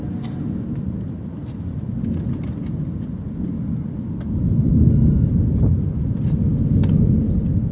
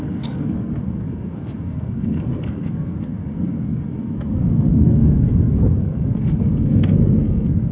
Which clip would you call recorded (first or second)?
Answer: first